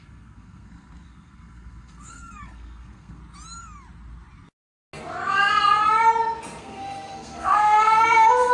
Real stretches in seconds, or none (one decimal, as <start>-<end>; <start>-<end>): 3.2-6.6